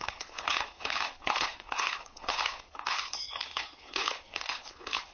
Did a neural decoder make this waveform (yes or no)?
yes